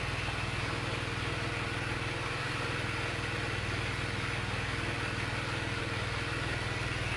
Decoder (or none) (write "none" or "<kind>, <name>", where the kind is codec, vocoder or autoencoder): none